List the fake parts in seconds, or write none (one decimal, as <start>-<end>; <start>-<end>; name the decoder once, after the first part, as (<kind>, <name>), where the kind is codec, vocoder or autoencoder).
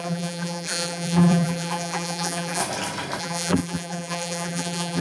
0.0-2.6 (vocoder, BigVGAN v2); 3.2-5.0